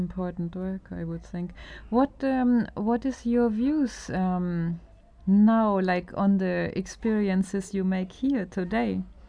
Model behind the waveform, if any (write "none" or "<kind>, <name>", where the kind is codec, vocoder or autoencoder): none